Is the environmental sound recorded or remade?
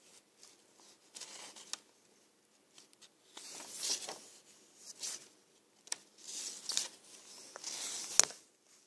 recorded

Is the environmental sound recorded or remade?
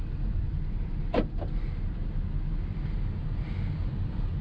recorded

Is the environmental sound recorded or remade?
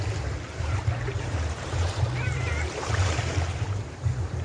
remade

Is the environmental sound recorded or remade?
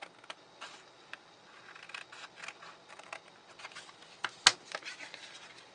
recorded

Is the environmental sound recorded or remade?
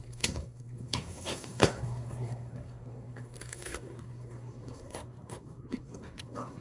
remade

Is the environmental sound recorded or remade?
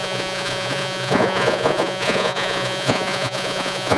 remade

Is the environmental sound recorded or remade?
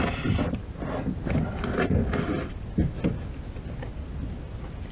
recorded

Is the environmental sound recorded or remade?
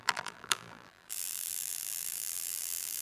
remade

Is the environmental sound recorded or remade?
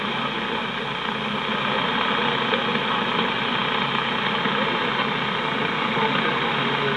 recorded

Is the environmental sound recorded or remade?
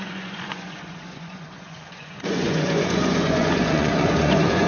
remade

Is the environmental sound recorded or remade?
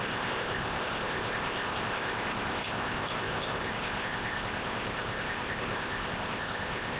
remade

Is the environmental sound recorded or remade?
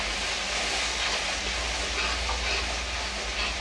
recorded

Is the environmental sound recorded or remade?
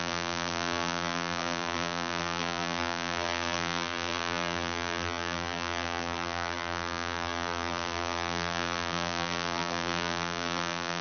remade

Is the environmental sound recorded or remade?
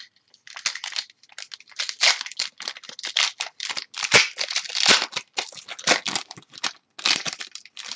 recorded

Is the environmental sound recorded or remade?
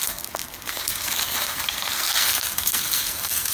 remade